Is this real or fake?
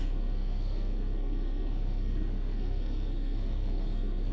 fake